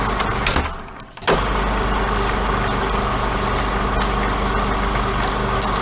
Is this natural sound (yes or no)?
yes